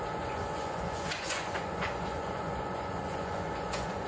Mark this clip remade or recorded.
remade